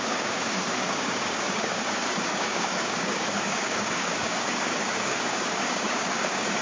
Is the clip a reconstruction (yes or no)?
yes